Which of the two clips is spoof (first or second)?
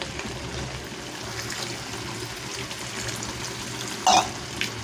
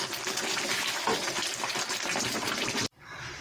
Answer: second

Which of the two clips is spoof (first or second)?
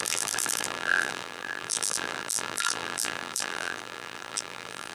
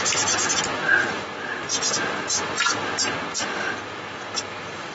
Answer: first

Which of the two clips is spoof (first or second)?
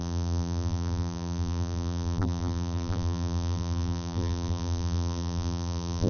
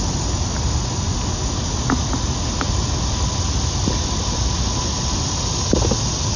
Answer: first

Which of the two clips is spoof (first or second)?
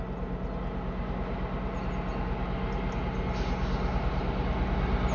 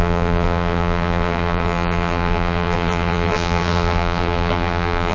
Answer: second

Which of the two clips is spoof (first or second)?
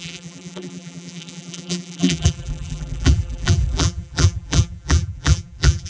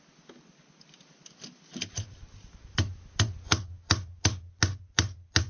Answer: first